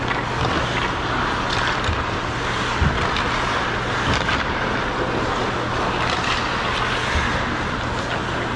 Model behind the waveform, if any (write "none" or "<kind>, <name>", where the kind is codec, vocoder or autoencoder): none